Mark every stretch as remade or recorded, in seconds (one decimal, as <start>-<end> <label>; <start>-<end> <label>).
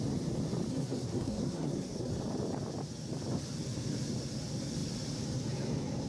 0.0-0.7 recorded; 0.7-2.1 remade; 2.1-6.1 recorded